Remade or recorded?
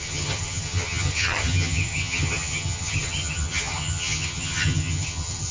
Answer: remade